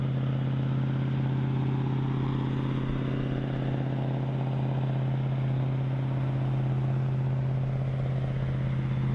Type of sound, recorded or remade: recorded